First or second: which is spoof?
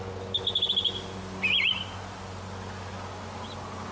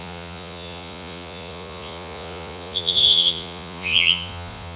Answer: second